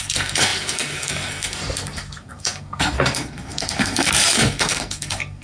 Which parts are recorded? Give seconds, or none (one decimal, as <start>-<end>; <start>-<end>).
none